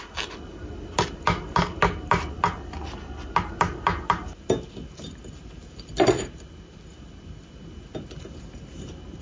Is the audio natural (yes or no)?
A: yes